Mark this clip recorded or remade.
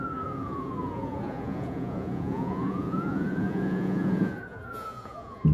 remade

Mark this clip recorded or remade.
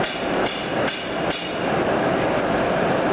remade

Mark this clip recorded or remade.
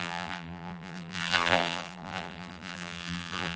remade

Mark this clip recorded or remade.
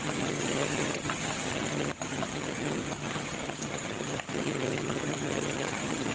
remade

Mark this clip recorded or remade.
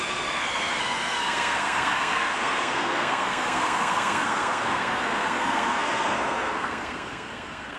remade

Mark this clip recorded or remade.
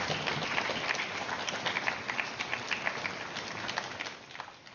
recorded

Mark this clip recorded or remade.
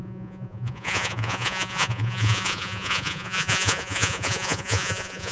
remade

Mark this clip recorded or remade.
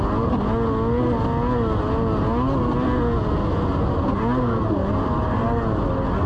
recorded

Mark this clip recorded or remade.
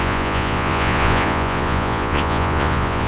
remade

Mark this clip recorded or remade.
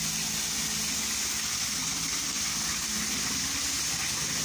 recorded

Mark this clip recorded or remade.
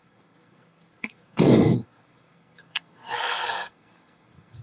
remade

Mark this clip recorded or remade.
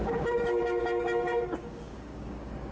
remade